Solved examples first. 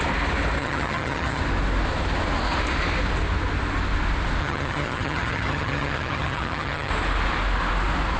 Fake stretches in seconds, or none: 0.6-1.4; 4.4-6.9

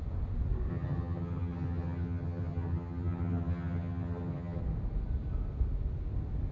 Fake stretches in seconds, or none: 0.7-4.6

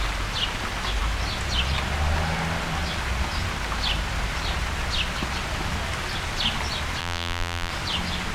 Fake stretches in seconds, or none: 7.0-7.7

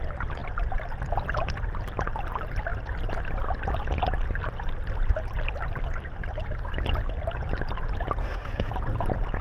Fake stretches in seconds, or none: 8.2-8.7

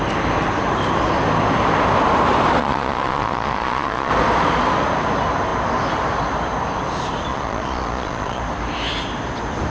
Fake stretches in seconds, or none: 2.6-4.1; 7.3-8.4